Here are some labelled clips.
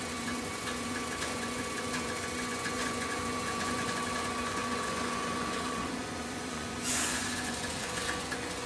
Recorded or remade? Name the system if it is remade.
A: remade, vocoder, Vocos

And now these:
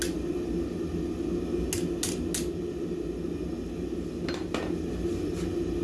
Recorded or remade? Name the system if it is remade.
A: recorded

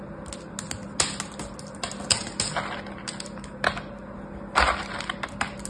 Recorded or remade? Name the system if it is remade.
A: recorded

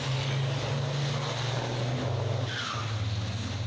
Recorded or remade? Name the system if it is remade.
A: recorded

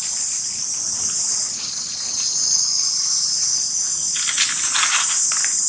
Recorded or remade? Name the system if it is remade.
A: recorded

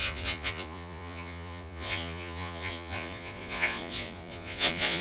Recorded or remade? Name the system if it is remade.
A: remade, vocoder, Vocos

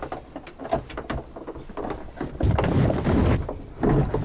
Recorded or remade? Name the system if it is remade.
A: recorded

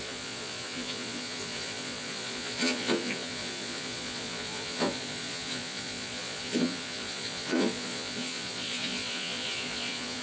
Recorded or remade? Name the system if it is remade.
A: remade, vocoder, Vocos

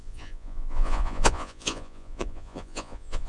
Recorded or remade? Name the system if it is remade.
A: remade, vocoder, Vocos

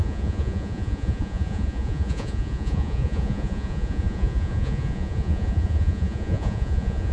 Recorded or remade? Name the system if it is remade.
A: remade, vocoder, Vocos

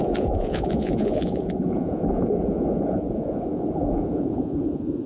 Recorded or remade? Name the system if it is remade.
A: remade, vocoder, Vocos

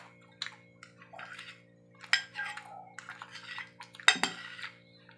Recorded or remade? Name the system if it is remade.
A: recorded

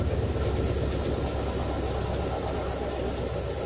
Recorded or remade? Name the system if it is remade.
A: recorded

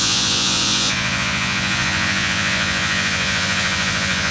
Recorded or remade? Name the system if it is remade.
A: remade, vocoder, Vocos